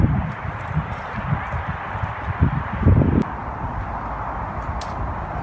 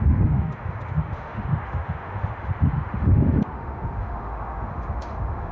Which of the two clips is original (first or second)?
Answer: first